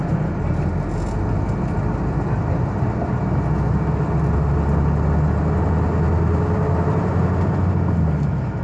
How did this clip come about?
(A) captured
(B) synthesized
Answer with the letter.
A